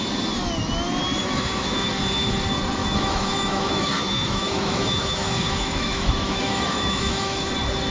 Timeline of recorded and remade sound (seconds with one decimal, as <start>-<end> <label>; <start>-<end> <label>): 0.0-1.2 recorded; 1.2-1.9 remade; 1.9-2.8 recorded; 2.8-7.5 remade; 7.5-7.9 recorded